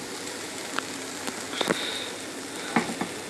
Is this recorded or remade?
recorded